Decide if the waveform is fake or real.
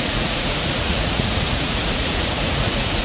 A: fake